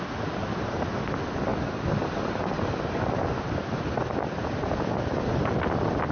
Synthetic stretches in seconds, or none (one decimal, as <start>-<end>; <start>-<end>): none